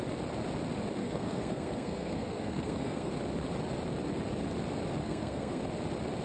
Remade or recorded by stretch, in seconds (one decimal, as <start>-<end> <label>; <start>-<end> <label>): 0.0-1.0 recorded; 1.0-3.1 remade; 3.1-5.0 recorded; 5.0-5.6 remade; 5.6-6.2 recorded